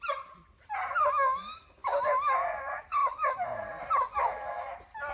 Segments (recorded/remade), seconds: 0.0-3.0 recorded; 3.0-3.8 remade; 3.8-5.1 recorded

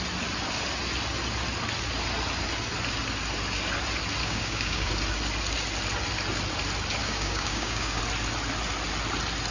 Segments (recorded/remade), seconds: 0.0-4.2 recorded; 4.2-4.9 remade; 4.9-7.0 recorded; 7.0-8.0 remade; 8.0-9.5 recorded

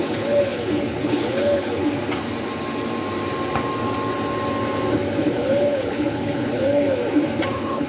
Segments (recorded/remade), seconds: 0.0-1.8 remade; 1.8-5.2 recorded; 5.2-7.0 remade; 7.0-7.5 recorded; 7.5-7.9 remade

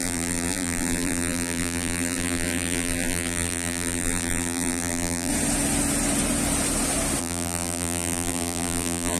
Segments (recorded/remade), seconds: 0.0-5.3 remade; 5.3-7.2 recorded; 7.2-9.2 remade

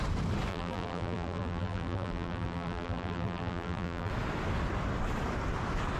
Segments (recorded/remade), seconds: 0.0-0.5 recorded; 0.5-4.1 remade; 4.1-6.0 recorded

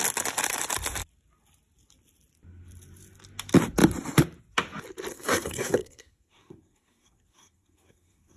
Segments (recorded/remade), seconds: 0.0-5.1 recorded; 5.1-8.4 remade